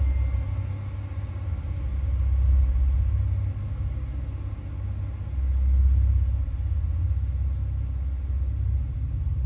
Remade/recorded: recorded